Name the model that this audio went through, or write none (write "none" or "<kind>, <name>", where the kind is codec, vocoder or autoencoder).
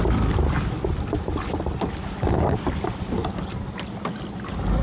none